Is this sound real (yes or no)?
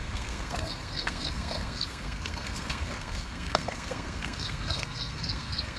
no